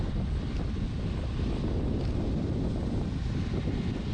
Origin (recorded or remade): recorded